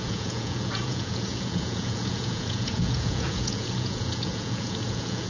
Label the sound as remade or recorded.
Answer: remade